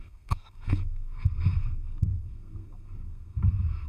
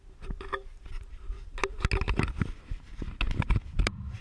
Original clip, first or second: second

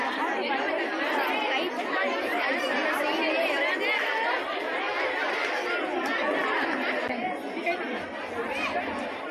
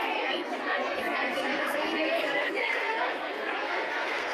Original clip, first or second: first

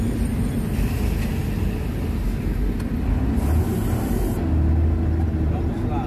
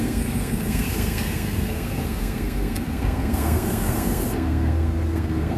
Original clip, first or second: first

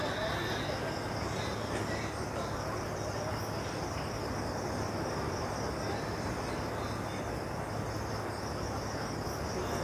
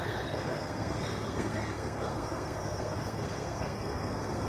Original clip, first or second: first